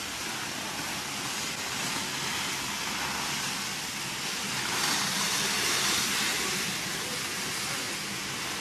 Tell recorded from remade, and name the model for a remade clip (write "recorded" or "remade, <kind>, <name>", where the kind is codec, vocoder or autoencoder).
recorded